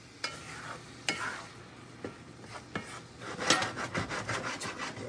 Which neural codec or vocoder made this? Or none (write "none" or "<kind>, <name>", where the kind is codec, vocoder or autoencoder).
none